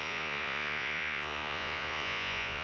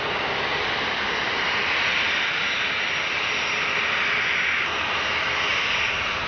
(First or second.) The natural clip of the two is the second